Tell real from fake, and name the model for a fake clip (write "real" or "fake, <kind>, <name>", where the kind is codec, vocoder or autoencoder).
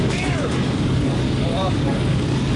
fake, codec, DAC